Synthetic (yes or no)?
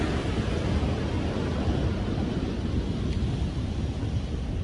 no